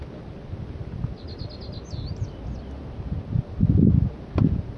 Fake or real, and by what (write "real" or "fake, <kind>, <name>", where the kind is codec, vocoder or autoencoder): real